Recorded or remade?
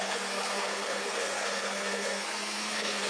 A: remade